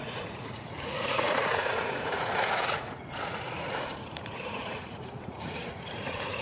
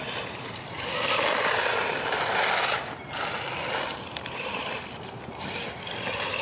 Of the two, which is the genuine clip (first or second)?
second